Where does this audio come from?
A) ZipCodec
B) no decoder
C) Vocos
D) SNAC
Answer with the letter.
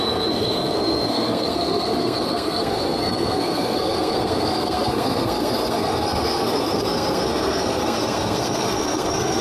D